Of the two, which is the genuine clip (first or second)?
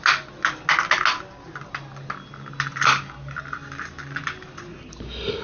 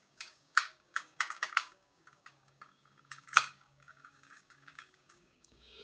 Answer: first